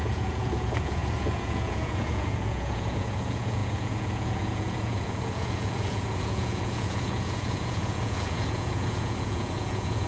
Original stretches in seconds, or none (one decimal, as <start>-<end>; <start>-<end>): none

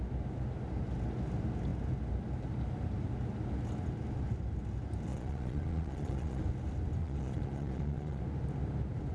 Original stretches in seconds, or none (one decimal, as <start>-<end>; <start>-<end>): 0.0-5.1; 6.4-7.0; 8.2-9.1